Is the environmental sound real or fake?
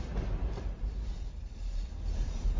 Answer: real